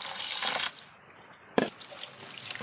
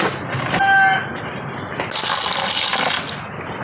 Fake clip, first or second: first